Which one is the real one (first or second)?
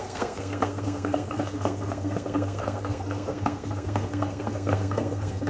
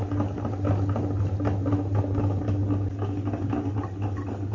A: second